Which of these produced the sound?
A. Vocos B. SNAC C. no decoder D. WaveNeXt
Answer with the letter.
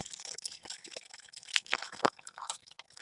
B